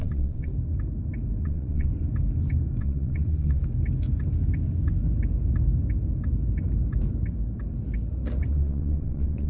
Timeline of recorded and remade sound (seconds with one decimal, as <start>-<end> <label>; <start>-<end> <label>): 0.0-0.5 remade; 0.5-1.4 recorded; 1.4-1.9 remade; 1.9-2.8 recorded; 2.8-3.6 remade; 3.6-8.5 recorded; 8.5-9.5 remade

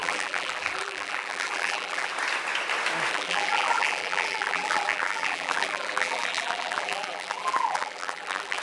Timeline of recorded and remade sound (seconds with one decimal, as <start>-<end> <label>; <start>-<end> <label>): 0.0-2.1 remade; 2.1-3.1 recorded; 3.1-8.6 remade

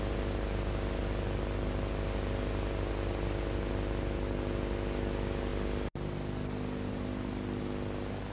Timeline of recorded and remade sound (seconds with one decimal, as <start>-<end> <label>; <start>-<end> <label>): 0.0-8.3 recorded

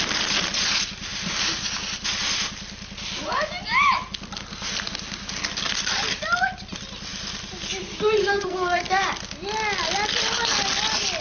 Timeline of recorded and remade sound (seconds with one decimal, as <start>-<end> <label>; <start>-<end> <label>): 0.0-8.3 recorded; 8.3-8.9 remade; 8.9-11.2 recorded

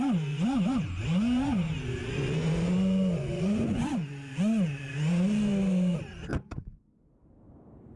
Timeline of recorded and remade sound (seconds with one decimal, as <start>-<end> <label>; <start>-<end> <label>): 0.0-2.0 recorded; 2.0-4.9 remade; 4.9-6.3 recorded; 6.3-6.8 remade; 6.8-8.0 recorded

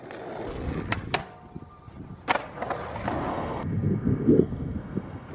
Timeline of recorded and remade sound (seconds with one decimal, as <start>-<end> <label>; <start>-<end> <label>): 0.0-3.3 recorded; 3.3-5.3 remade

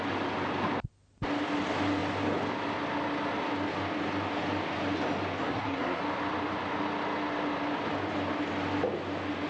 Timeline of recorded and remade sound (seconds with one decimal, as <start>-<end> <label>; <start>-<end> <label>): 0.0-5.4 recorded; 5.4-6.0 remade; 6.0-9.5 recorded

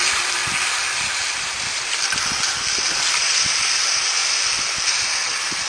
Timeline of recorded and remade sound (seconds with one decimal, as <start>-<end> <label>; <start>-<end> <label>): 0.0-5.7 recorded